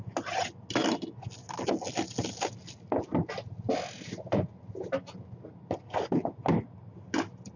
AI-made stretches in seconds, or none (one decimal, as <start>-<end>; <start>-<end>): none